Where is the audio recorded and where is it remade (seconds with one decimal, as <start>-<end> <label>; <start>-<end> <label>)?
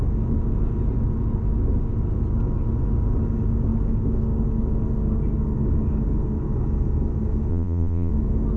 0.0-7.5 recorded; 7.5-8.1 remade; 8.1-8.6 recorded